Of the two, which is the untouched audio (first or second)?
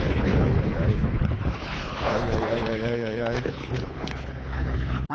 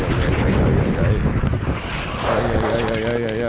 second